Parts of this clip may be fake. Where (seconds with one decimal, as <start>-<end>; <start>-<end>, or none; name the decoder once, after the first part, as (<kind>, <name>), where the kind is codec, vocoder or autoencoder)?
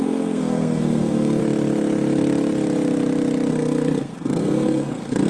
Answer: 0.0-1.4 (codec, SNAC); 3.5-5.3